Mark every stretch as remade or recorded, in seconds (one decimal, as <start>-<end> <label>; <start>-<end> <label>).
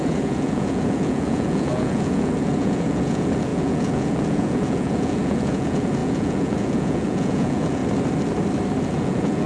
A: 0.0-7.8 remade; 7.8-8.8 recorded; 8.8-9.5 remade